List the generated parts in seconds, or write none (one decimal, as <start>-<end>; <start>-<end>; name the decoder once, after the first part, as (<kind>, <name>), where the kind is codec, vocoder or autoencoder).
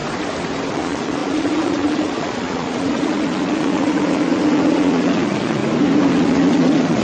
0.7-5.6 (vocoder, Vocos); 6.1-7.0